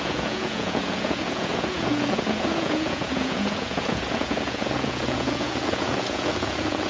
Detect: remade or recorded remade